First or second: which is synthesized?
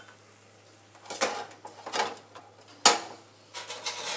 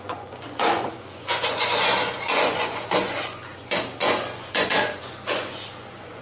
second